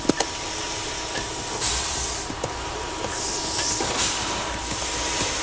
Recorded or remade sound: recorded